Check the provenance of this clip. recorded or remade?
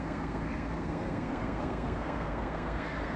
remade